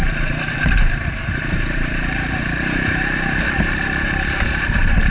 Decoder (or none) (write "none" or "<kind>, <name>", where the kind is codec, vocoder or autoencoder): vocoder, BigVGAN v2